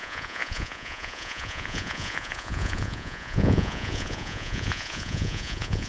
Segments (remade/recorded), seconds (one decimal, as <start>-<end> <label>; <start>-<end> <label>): 0.0-5.9 remade